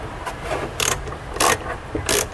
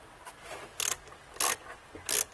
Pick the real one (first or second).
second